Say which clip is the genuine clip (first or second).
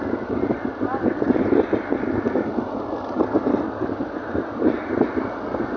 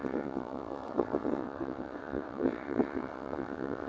first